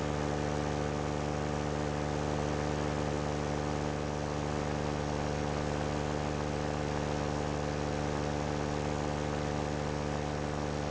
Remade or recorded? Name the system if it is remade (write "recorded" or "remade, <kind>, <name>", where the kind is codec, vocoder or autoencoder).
recorded